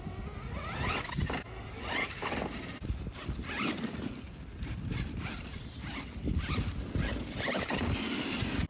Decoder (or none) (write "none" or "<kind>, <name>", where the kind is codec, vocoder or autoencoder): none